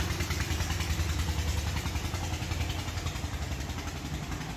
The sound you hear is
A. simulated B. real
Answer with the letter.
B